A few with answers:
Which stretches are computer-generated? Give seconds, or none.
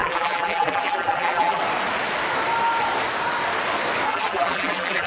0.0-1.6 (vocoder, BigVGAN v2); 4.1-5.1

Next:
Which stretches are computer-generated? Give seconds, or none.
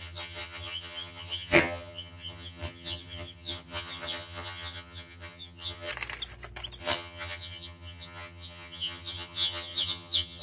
0.0-5.9 (vocoder, HiFi-GAN); 6.8-10.4